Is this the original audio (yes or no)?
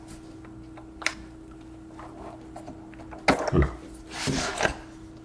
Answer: yes